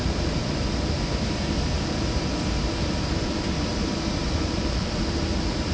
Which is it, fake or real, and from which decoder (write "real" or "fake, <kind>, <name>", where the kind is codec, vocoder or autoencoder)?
fake, vocoder, BigVGAN v2